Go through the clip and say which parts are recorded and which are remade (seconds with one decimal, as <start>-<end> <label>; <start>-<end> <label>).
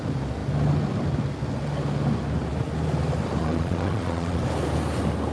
0.0-3.4 recorded; 3.4-4.4 remade; 4.4-5.3 recorded